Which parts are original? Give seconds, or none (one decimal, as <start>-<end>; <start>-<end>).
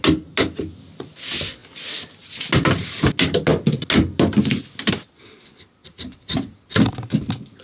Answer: 0.0-5.8; 6.7-7.6